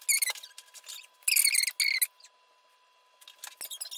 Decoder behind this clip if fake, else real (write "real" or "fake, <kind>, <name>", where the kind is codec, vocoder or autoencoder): real